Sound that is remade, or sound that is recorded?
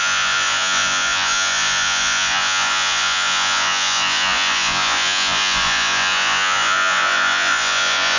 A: remade